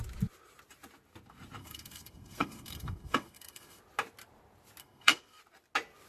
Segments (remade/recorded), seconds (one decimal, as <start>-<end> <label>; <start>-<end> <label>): 0.0-1.6 recorded; 1.6-3.8 remade; 3.8-4.8 recorded; 4.8-5.4 remade; 5.4-6.1 recorded